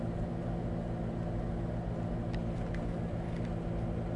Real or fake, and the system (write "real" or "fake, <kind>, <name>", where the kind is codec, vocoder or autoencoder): real